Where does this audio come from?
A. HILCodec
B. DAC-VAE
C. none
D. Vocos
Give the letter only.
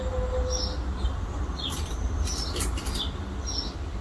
C